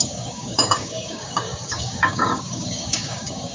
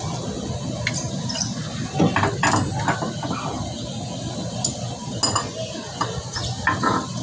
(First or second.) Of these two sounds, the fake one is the first